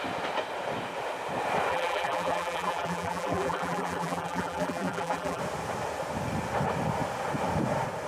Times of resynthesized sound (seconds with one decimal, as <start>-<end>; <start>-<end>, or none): 1.7-5.4

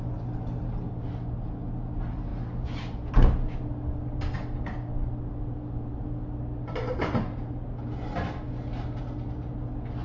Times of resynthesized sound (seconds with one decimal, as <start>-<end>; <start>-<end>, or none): none

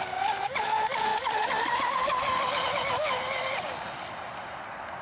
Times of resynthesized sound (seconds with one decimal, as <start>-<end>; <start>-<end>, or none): 1.1-1.9

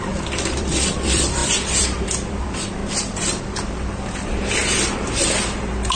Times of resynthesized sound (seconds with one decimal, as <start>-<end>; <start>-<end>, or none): 0.0-2.8; 3.4-4.6

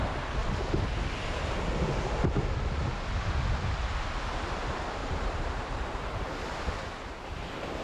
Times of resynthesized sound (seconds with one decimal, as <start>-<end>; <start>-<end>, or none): 5.0-6.9

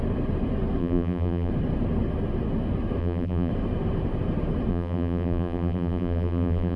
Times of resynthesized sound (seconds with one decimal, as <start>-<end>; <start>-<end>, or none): 0.8-1.5; 3.0-3.5; 4.7-6.8

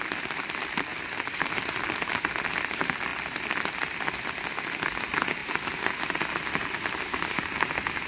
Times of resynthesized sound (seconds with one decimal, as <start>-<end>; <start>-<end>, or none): 0.9-2.3; 5.4-6.0